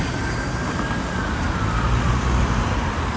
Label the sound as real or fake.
real